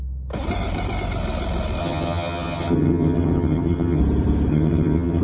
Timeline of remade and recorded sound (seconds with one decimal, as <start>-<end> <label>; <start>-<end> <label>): 0.0-1.8 recorded; 1.8-4.0 remade; 4.0-4.5 recorded; 4.5-5.2 remade